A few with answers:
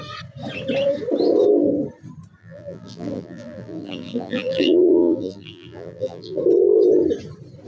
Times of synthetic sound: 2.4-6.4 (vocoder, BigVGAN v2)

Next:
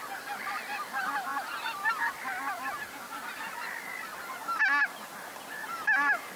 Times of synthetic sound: none

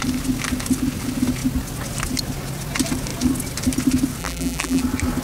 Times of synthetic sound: 4.2-4.8 (vocoder, BigVGAN v2)

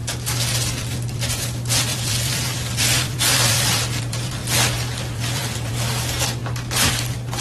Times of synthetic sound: 0.7-4.4 (vocoder, BigVGAN v2); 5.1-6.4

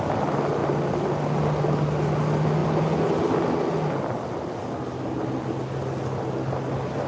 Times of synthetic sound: none